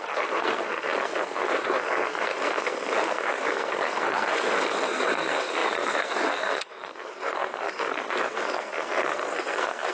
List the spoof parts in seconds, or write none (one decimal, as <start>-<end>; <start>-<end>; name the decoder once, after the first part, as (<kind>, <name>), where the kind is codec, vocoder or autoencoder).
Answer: 0.0-9.9 (codec, SNAC)